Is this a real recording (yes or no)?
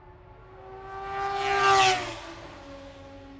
yes